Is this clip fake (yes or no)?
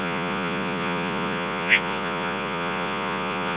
yes